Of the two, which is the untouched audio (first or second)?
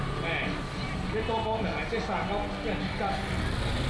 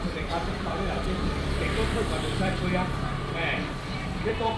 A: first